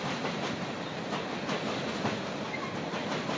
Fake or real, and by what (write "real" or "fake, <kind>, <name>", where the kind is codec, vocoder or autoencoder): real